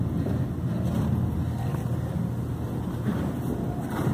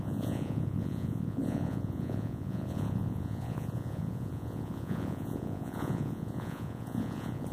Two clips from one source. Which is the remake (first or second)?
second